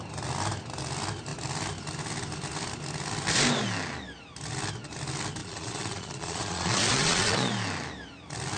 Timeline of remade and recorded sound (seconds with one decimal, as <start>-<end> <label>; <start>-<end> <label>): 0.0-5.4 recorded; 5.4-7.5 remade; 7.5-8.6 recorded